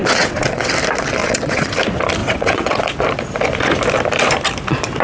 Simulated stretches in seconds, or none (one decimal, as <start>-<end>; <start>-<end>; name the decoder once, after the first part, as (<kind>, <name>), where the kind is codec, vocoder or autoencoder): 0.0-0.7 (vocoder, WaveNeXt); 1.2-1.7; 2.2-2.8